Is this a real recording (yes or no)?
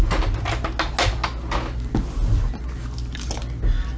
yes